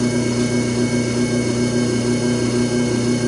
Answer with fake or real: real